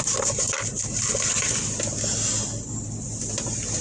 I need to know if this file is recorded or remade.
recorded